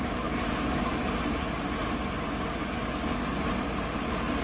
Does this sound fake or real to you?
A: real